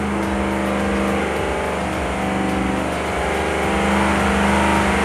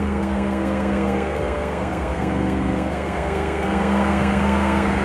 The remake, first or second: second